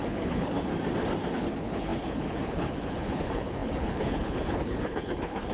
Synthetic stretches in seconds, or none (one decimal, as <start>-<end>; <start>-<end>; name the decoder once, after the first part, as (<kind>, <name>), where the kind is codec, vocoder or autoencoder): 0.0-0.7 (codec, HILCodec); 1.3-5.5